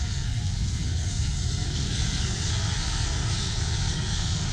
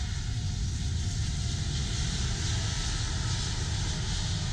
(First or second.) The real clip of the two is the second